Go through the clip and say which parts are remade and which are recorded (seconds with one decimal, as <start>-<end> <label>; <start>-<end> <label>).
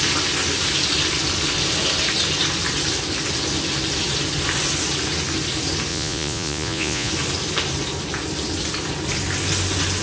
0.0-5.9 recorded; 5.9-7.1 remade; 7.1-10.0 recorded